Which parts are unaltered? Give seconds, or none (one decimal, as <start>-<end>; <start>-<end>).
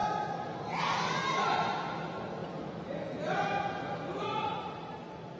0.8-2.4; 4.2-5.4